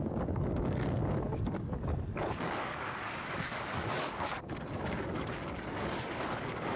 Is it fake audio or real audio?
fake